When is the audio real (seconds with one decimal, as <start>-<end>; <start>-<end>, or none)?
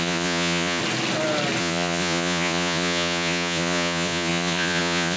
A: 0.8-1.6